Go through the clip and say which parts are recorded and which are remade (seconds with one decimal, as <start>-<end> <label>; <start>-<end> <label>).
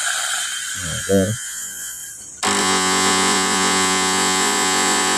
0.0-1.0 recorded; 1.0-2.0 remade; 2.0-2.6 recorded; 2.6-5.2 remade